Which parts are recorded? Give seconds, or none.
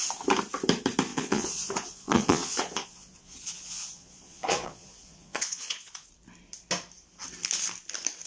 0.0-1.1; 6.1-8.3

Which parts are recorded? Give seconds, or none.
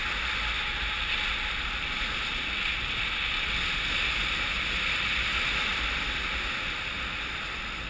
0.0-7.9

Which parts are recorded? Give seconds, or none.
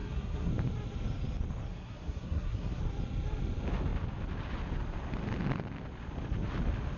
0.5-1.7; 2.8-7.0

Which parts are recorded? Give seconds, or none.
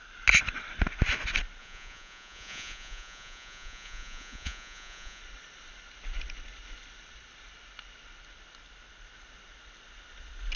0.0-1.6; 5.2-10.6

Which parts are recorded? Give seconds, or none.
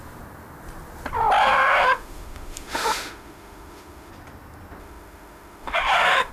0.0-1.4; 4.1-4.8